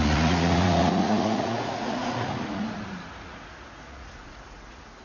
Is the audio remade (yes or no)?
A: yes